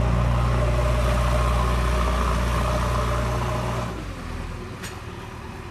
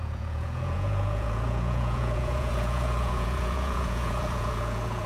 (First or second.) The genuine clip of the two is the first